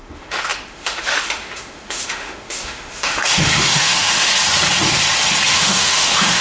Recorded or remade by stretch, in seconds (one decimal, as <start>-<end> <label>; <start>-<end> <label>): 0.0-4.3 remade; 4.3-5.5 recorded; 5.5-6.4 remade